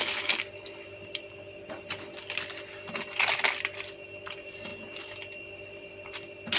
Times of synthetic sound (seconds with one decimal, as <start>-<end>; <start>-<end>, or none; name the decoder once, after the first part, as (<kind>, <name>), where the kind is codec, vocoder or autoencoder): 0.0-6.6 (vocoder, BigVGAN v2)